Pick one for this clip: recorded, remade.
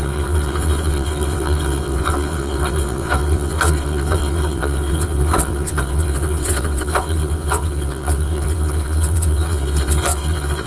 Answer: remade